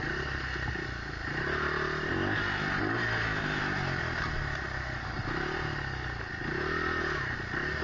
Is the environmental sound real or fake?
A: real